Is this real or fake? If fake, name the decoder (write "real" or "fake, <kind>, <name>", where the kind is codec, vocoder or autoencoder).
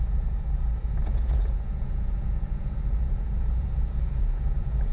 fake, vocoder, Vocos